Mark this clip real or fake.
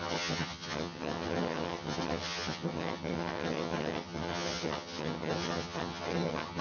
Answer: fake